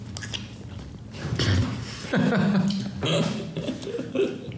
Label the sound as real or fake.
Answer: real